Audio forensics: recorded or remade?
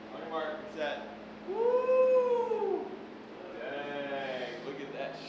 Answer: recorded